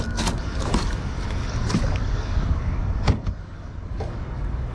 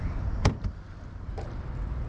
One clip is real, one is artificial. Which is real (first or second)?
second